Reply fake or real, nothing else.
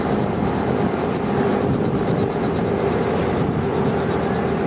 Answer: real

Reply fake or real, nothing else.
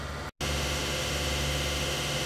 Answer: real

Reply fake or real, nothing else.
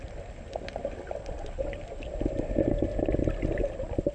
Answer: real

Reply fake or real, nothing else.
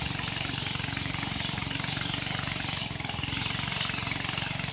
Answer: fake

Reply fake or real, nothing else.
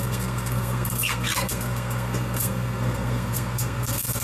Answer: fake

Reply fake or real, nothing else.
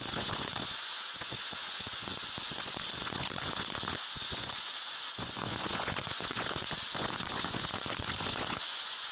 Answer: fake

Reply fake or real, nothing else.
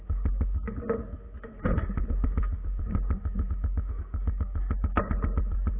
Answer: real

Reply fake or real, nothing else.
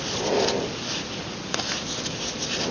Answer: real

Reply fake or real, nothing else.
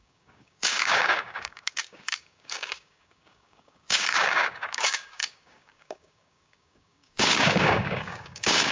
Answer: fake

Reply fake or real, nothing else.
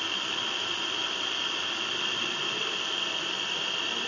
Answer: real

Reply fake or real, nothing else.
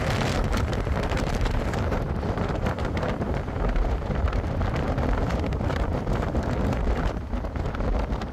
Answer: fake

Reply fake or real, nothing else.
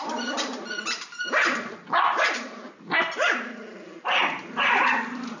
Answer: real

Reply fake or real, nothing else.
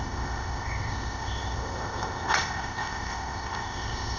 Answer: fake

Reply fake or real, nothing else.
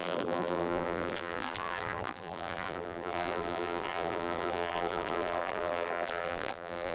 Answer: fake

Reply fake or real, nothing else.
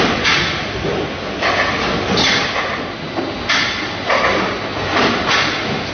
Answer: real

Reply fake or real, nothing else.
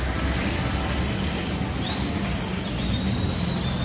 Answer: real